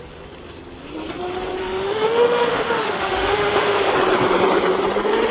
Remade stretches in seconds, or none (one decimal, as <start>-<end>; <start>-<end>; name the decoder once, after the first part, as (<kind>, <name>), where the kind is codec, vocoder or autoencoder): 1.6-3.9 (autoencoder, DAC-VAE)